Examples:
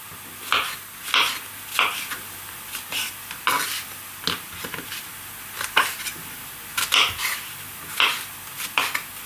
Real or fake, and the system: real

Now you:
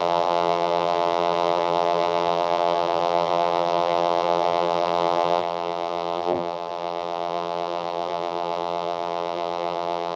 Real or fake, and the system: fake, vocoder, BigVGAN v2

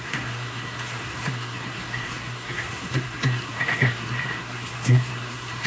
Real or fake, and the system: fake, codec, SNAC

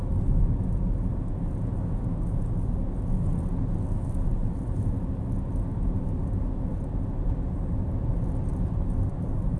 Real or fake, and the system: real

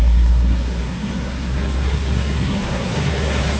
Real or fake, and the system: fake, codec, SNAC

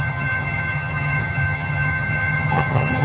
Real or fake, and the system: fake, vocoder, HiFi-GAN